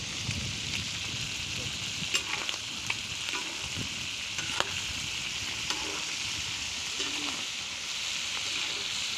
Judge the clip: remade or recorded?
recorded